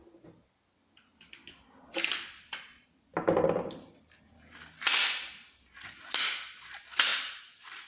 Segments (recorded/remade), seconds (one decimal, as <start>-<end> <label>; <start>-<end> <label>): 0.0-7.1 recorded; 7.1-7.9 remade